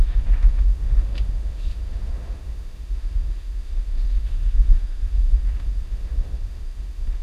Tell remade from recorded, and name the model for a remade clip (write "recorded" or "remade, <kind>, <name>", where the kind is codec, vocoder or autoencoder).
remade, autoencoder, DAC-VAE